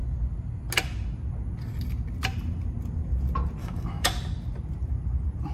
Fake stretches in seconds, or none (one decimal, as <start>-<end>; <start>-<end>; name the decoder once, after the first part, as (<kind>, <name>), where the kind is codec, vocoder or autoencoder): 3.6-4.1 (autoencoder, DAC-VAE)